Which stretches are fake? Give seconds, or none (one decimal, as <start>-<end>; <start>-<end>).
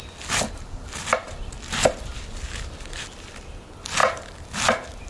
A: none